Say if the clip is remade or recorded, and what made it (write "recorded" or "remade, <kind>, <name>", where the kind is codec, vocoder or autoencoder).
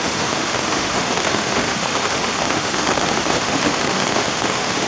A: remade, autoencoder, DAC-VAE